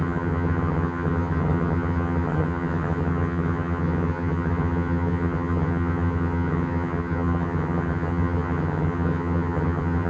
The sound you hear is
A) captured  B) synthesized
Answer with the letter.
B